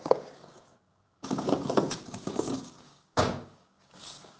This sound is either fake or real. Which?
fake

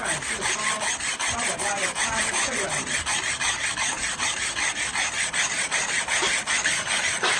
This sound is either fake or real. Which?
fake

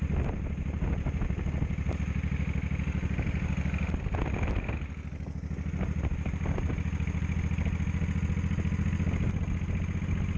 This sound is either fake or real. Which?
real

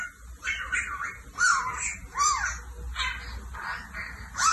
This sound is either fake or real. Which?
real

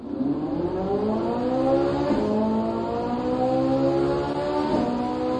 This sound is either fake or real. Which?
real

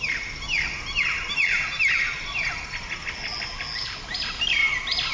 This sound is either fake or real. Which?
real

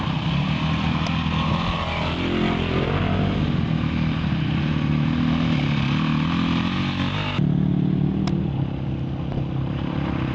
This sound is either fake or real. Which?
real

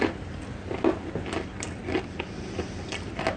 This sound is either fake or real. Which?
real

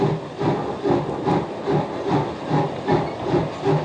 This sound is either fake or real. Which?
real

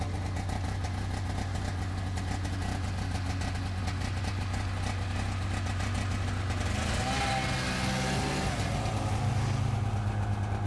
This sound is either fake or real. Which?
real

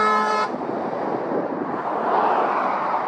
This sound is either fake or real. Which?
fake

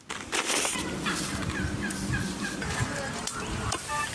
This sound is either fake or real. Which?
fake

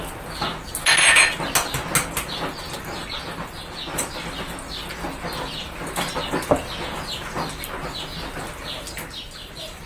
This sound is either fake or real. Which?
real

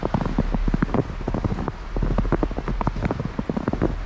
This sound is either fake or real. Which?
real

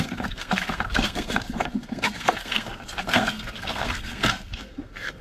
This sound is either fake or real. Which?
fake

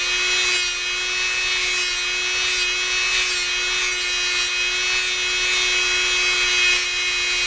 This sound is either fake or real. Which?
real